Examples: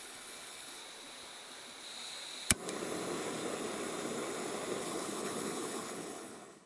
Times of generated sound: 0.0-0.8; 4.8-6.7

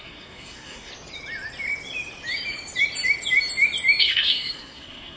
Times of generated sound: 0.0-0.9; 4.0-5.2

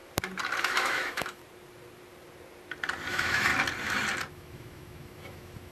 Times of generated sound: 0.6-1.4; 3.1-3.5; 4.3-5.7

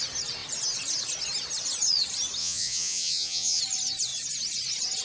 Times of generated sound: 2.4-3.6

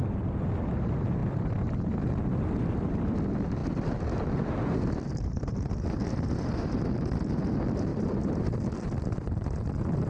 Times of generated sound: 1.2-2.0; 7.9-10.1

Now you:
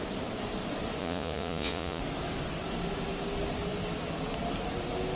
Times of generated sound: 1.0-2.0